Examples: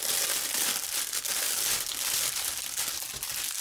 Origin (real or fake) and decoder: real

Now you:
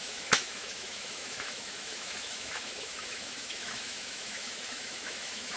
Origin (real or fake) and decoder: fake, autoencoder, DAC-VAE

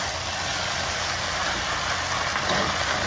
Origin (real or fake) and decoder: real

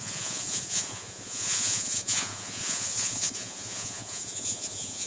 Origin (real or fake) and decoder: fake, vocoder, Vocos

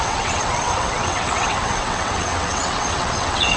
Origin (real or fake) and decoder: fake, vocoder, WaveNeXt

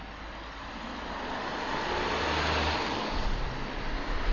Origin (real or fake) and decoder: real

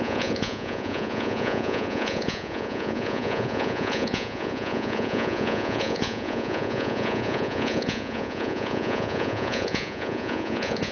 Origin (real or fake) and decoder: fake, vocoder, Vocos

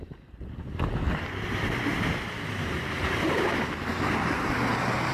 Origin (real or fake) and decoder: fake, vocoder, BigVGAN v2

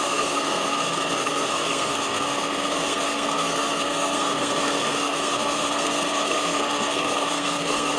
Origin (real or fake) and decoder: fake, codec, SNAC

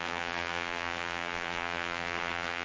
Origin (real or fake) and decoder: fake, vocoder, BigVGAN v2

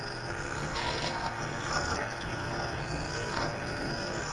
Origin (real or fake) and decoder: fake, codec, SNAC